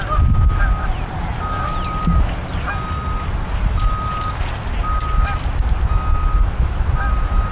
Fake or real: real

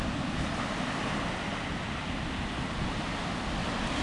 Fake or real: real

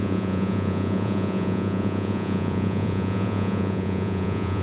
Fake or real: fake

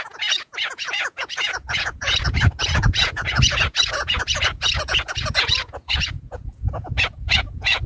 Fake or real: fake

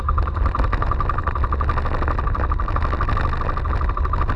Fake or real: real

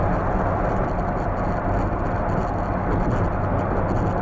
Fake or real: real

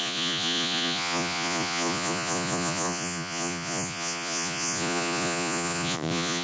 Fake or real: fake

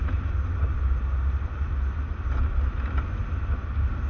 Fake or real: real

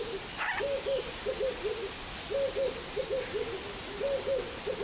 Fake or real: real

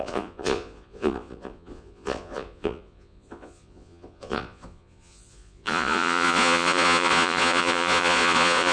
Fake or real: fake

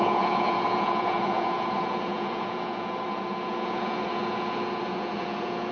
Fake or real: fake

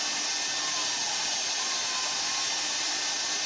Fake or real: real